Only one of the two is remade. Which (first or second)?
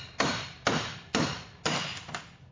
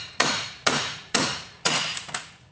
second